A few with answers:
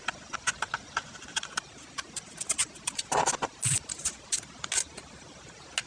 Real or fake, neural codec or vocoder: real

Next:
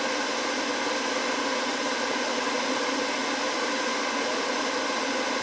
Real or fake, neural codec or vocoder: real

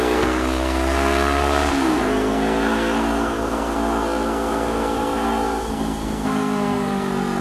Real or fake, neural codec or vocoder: fake, codec, SNAC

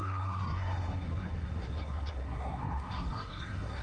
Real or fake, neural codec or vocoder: fake, codec, SNAC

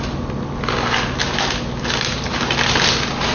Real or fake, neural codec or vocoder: real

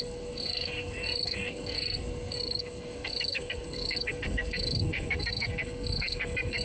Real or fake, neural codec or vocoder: fake, codec, SNAC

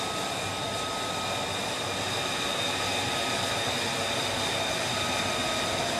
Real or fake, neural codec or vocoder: real